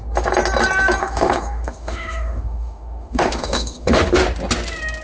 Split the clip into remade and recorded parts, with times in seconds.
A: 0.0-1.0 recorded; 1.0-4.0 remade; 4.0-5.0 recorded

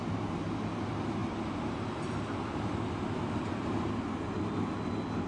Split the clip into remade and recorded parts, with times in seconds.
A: 0.0-5.3 recorded

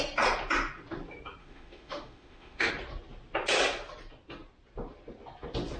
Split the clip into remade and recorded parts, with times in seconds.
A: 0.0-1.4 recorded; 1.4-2.7 remade; 2.7-5.8 recorded

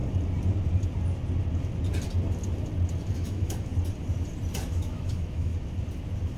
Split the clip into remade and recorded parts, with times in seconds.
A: 0.0-3.1 recorded; 3.1-3.7 remade; 3.7-4.7 recorded; 4.7-5.5 remade; 5.5-6.4 recorded

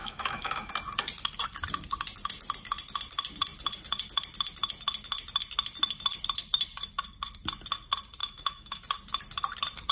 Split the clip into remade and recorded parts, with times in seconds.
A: 0.0-0.7 remade; 0.7-8.2 recorded; 8.2-8.8 remade; 8.8-9.9 recorded

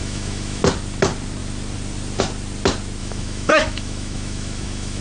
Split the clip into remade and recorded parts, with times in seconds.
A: 0.0-0.6 remade; 0.6-3.0 recorded; 3.0-5.0 remade

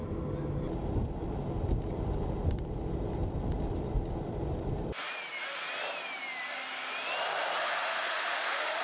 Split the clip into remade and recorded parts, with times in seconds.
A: 0.0-7.9 recorded; 7.9-8.8 remade